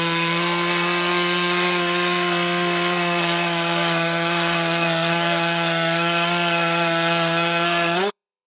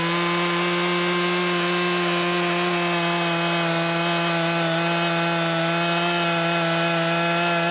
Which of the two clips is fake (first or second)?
first